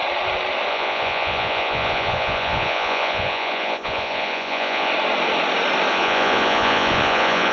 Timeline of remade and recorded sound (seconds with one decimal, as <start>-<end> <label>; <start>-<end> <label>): 0.0-0.7 recorded; 0.7-4.9 remade; 4.9-5.9 recorded; 5.9-7.5 remade